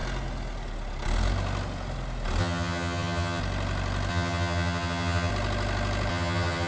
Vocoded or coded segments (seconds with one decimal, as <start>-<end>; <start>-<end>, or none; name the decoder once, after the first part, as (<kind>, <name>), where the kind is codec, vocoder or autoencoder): 2.4-3.4 (vocoder, HiFi-GAN); 4.1-5.3; 6.1-6.7